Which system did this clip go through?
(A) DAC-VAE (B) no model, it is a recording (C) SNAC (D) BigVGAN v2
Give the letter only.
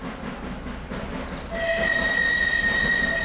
B